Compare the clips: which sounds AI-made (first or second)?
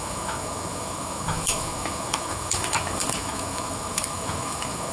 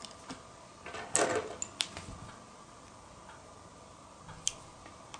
first